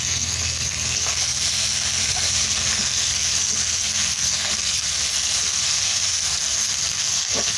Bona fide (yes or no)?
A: no